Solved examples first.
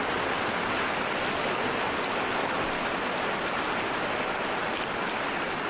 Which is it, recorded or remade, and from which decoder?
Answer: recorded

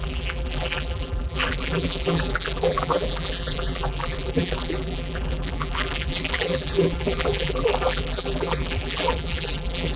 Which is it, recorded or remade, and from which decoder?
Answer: remade, vocoder, BigVGAN v2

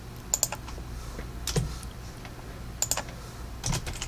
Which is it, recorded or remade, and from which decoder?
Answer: recorded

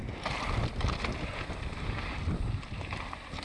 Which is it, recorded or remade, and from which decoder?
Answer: recorded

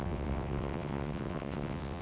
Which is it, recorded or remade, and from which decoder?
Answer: remade, vocoder, WaveNeXt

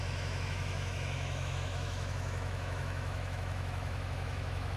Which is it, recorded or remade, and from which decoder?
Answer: remade, autoencoder, DAC-VAE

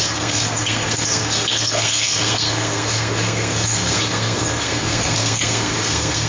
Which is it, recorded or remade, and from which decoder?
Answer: remade, codec, SNAC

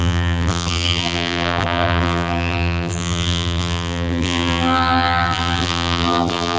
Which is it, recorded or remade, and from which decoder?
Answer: remade, vocoder, BigVGAN v2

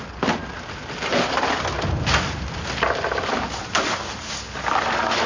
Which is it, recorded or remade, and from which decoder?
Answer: recorded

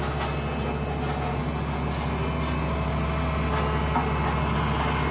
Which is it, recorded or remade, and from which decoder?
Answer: recorded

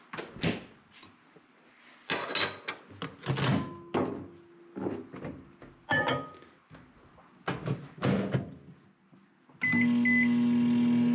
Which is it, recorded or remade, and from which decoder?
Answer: recorded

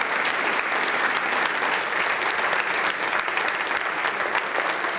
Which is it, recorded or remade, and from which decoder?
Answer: remade, vocoder, BigVGAN v2